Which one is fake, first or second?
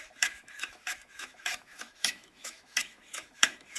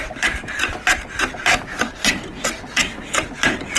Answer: first